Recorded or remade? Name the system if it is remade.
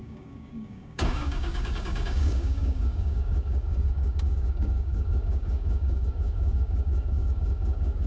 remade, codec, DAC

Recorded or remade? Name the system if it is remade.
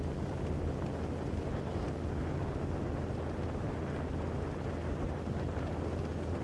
recorded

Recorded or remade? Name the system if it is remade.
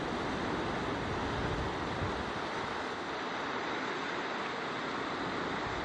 recorded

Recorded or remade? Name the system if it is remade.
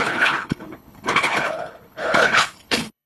remade, codec, HILCodec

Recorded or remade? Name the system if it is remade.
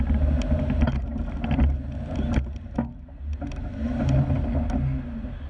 recorded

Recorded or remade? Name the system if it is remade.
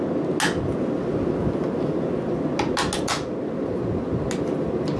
recorded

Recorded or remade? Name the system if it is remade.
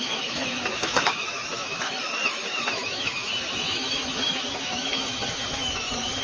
remade, autoencoder, DAC-VAE